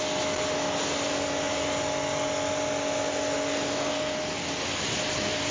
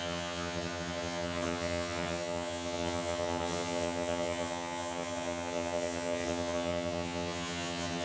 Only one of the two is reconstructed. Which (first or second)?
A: second